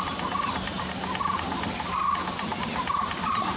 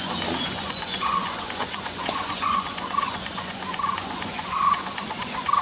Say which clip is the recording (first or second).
first